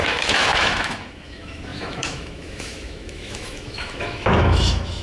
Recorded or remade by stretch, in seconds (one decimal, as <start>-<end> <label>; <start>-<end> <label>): 0.0-5.0 remade